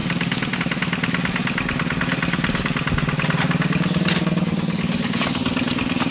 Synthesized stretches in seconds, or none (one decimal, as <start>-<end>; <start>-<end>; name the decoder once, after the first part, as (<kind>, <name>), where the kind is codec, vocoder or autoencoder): none